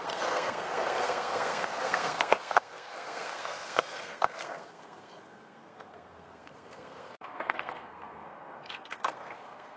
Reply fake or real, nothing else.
fake